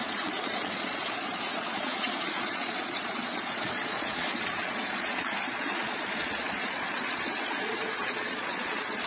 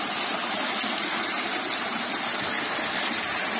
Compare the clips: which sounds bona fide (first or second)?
second